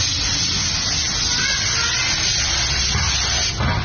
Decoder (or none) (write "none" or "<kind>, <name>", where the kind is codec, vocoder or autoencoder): none